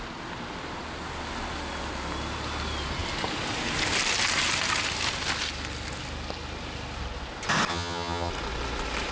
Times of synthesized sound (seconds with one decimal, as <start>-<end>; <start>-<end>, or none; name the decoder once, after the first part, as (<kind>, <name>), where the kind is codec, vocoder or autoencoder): 7.7-8.3 (vocoder, HiFi-GAN)